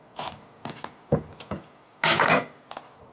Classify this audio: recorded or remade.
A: recorded